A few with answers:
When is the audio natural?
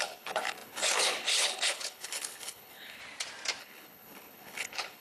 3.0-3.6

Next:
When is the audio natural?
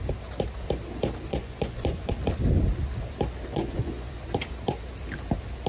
0.0-1.3; 2.1-3.5; 4.1-5.7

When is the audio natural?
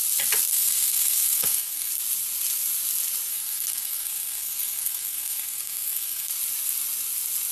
0.0-0.5; 1.9-3.3; 6.3-7.5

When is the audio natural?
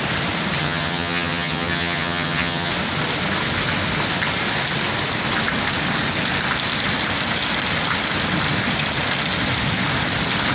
0.0-0.6; 2.7-10.5